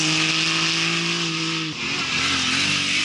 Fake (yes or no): no